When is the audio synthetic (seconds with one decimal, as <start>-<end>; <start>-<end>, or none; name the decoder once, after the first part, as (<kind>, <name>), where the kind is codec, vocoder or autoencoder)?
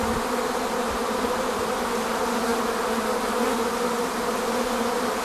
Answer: none